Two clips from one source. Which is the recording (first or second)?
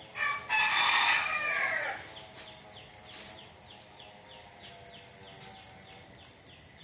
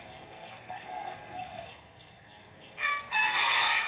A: first